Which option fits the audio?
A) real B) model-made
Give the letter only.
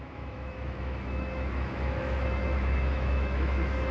B